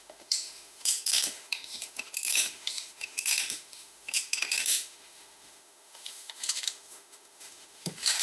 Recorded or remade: remade